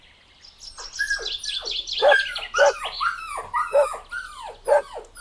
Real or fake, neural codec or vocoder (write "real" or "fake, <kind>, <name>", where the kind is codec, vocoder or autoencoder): real